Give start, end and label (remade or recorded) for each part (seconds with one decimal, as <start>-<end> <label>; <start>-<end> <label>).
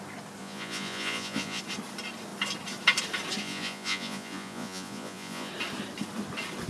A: 0.0-0.4 recorded; 0.4-1.6 remade; 1.6-3.4 recorded; 3.4-5.5 remade; 5.5-6.7 recorded